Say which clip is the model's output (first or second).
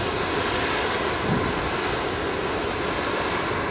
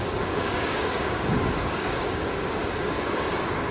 second